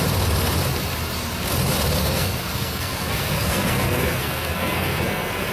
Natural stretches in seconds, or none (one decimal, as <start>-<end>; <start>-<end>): 0.0-2.0